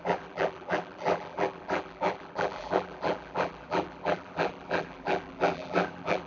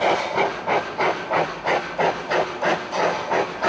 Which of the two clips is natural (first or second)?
second